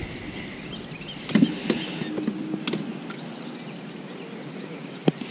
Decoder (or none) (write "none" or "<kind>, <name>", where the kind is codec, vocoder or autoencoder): none